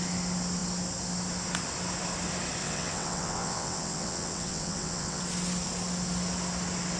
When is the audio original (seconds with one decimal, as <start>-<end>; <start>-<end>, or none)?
0.0-2.6; 5.2-7.0